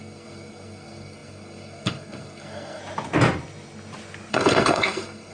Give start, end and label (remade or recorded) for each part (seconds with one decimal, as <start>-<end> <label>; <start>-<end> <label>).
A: 0.0-2.8 remade; 2.8-4.3 recorded; 4.3-5.3 remade